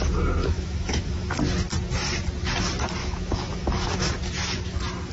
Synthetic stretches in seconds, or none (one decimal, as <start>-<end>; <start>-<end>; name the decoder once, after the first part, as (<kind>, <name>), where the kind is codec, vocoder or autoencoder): 0.4-1.3 (autoencoder, DAC-VAE); 3.0-4.1